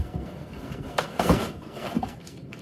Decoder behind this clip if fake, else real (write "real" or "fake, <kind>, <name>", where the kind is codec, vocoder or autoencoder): fake, codec, SNAC